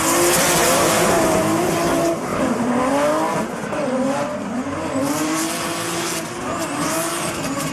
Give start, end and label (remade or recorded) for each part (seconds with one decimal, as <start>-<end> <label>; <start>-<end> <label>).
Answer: 0.0-0.6 recorded; 0.6-1.4 remade; 1.4-2.3 recorded; 2.3-2.9 remade; 2.9-7.7 recorded